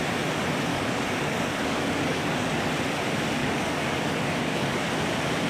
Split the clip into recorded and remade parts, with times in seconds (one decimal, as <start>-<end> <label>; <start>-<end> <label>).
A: 0.0-0.7 recorded; 0.7-2.7 remade; 2.7-3.4 recorded; 3.4-4.9 remade; 4.9-5.5 recorded